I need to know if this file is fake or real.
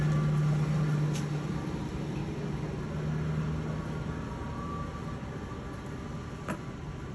real